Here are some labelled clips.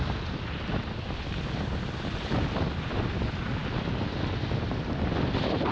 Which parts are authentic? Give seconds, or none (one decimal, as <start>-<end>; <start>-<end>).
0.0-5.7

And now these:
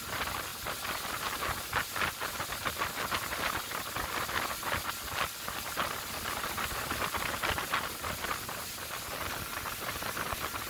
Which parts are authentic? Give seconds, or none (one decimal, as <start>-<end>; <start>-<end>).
0.0-10.7

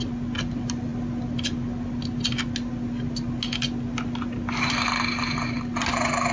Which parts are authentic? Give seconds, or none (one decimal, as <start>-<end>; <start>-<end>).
0.0-6.3

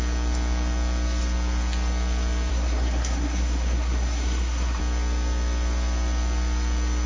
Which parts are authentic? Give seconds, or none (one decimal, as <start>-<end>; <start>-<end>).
0.0-2.5; 4.8-7.1